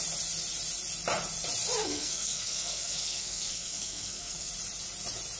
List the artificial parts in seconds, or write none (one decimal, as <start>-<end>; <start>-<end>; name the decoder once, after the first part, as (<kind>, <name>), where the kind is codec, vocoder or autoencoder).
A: 1.8-4.5 (codec, SNAC)

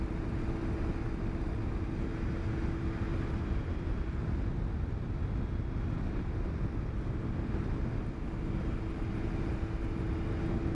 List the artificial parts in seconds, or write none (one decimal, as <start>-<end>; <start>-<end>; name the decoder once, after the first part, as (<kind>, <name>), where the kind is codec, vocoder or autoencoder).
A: 3.1-4.3 (vocoder, BigVGAN v2)

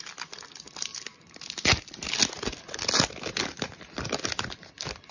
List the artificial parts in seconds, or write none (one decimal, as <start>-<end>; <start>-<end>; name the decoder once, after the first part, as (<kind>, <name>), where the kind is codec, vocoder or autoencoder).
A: none

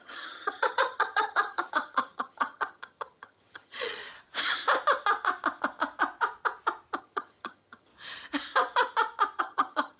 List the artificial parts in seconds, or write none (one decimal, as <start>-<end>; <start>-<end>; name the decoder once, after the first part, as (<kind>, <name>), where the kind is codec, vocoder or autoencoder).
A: 0.0-4.0 (vocoder, HiFi-GAN); 7.0-7.9; 9.4-10.0

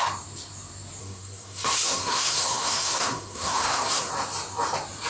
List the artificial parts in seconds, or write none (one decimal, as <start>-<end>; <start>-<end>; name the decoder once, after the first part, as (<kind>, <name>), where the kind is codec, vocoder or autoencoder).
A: 1.0-4.1 (codec, SNAC)